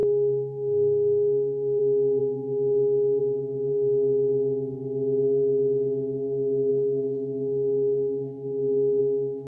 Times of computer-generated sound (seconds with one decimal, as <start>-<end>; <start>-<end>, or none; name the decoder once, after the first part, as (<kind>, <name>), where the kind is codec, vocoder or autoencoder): 0.0-1.8 (codec, SNAC); 2.2-3.2; 6.7-9.0